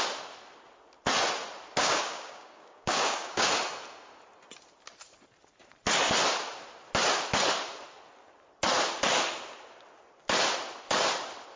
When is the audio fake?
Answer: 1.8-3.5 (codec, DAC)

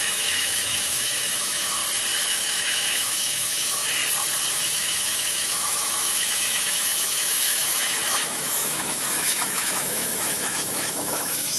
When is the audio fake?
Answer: 0.0-1.8 (autoencoder, DAC-VAE); 2.3-4.0; 4.5-11.6

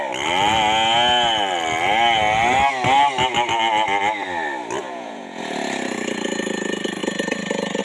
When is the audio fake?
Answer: 4.8-5.4 (vocoder, Vocos)

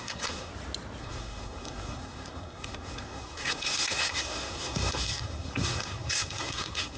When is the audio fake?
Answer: 0.0-0.5 (codec, SNAC); 1.0-7.0

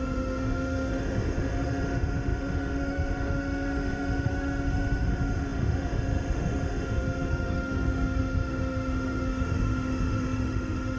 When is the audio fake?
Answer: 0.0-11.0 (autoencoder, DAC-VAE)

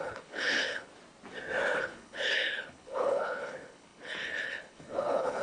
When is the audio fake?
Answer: 0.0-0.9 (codec, HILCodec); 1.8-5.4